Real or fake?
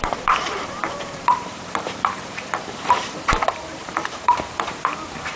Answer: fake